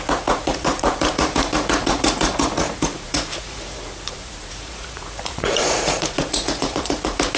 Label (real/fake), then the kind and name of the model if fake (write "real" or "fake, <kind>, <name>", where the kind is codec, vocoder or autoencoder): fake, vocoder, Vocos